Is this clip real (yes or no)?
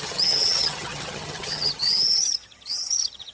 no